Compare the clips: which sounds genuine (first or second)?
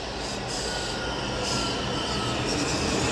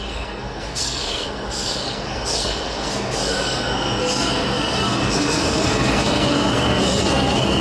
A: first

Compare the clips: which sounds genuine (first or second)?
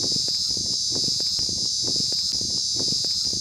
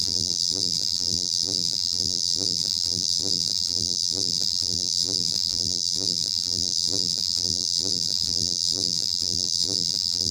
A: first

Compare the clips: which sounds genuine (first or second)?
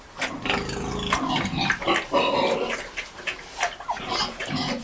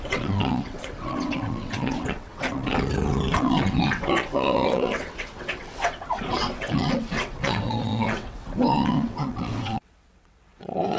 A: first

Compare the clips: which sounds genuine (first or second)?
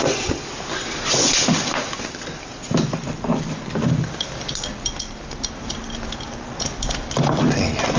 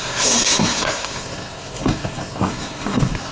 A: first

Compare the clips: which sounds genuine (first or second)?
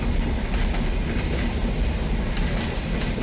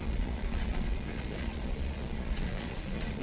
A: first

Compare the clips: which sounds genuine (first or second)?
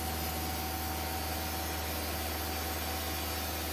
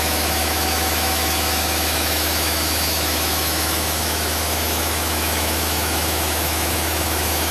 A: first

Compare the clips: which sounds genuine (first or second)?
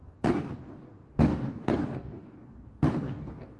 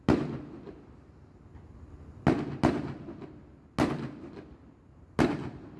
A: second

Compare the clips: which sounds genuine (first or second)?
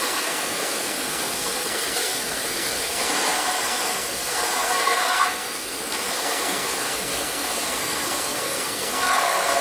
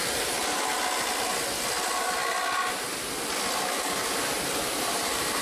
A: second